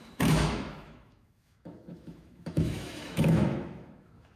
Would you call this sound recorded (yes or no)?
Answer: no